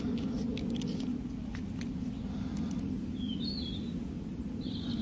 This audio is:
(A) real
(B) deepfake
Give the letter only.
A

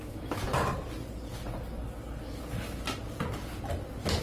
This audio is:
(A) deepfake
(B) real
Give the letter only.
B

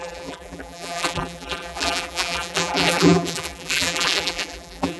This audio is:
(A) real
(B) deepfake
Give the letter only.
B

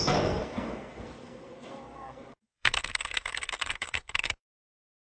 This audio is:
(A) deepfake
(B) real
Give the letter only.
A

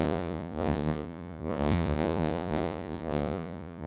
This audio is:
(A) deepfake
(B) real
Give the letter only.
A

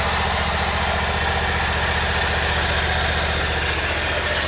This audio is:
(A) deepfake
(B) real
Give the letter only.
B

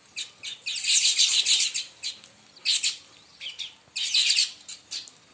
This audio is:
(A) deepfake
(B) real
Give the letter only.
B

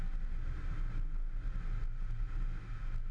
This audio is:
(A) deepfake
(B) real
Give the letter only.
B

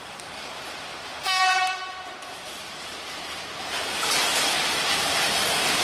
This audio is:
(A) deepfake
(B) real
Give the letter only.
A